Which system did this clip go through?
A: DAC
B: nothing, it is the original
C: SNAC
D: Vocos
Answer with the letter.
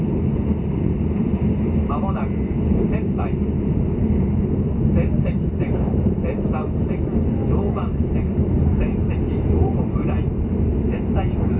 B